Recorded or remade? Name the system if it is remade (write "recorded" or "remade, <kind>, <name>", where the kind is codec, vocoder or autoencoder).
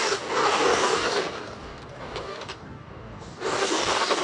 remade, codec, DAC